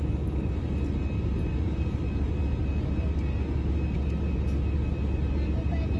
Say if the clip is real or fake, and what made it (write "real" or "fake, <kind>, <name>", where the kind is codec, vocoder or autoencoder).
real